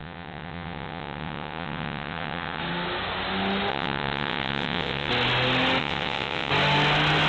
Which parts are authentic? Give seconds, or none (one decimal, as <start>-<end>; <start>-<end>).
2.6-3.7; 5.1-5.8; 6.5-7.3